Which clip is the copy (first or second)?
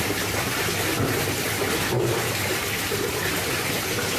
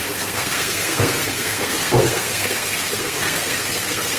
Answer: second